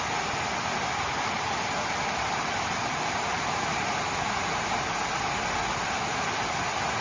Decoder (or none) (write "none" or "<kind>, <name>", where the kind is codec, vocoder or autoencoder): none